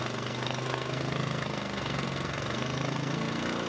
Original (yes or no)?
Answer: no